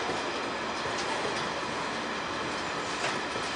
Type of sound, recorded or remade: recorded